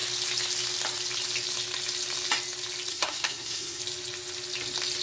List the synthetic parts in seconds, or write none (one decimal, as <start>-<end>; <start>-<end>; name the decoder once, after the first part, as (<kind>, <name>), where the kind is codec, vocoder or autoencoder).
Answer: 2.9-3.8 (codec, SNAC)